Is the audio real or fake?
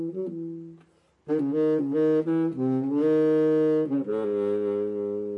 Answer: real